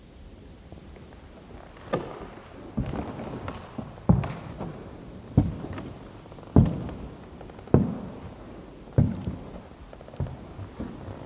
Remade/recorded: recorded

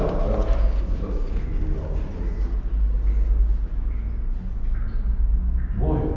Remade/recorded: recorded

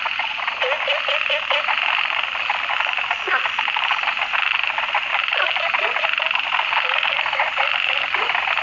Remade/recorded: recorded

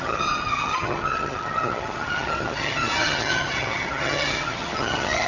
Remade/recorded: remade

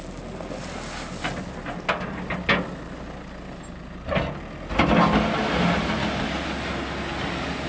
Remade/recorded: recorded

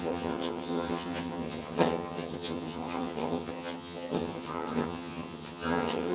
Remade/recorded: remade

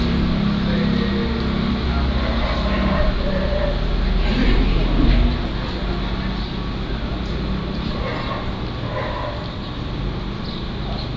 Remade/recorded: recorded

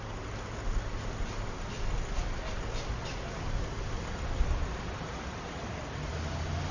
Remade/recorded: recorded